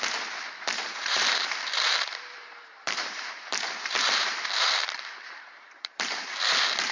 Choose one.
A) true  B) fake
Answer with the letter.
B